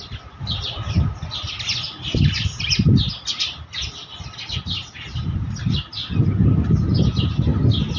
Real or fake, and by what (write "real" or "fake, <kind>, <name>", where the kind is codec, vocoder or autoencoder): real